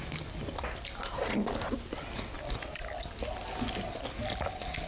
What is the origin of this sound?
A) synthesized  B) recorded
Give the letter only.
B